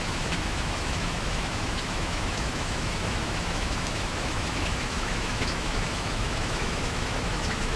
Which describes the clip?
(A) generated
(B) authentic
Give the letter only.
A